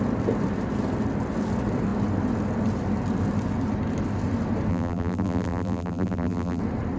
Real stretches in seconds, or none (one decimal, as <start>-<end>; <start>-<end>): 0.0-4.7; 6.6-7.0